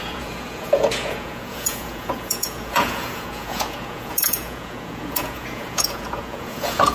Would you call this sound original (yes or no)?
no